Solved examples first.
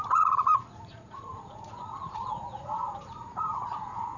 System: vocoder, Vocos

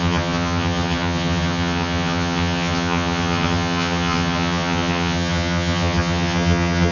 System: vocoder, HiFi-GAN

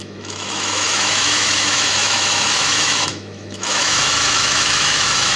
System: autoencoder, DAC-VAE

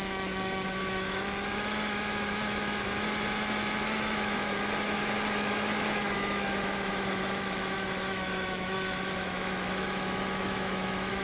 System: autoencoder, DAC-VAE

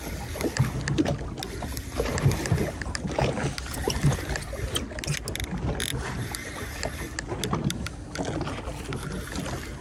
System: none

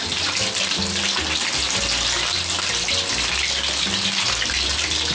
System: none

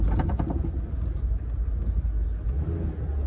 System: none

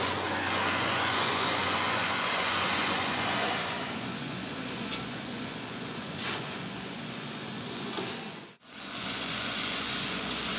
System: vocoder, Vocos